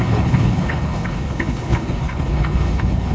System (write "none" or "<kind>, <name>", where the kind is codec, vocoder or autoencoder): codec, HILCodec